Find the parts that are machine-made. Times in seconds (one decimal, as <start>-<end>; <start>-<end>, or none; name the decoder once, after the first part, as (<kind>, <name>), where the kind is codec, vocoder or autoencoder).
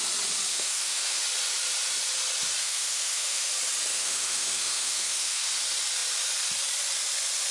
0.5-1.2 (autoencoder, DAC-VAE); 2.6-3.5; 3.9-5.5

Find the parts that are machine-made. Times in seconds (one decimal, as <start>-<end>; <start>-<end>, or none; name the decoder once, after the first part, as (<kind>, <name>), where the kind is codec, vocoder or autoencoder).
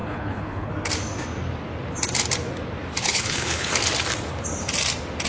0.0-0.7 (codec, HILCodec); 3.0-3.7